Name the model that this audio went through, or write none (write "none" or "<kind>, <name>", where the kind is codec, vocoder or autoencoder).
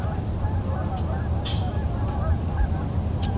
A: none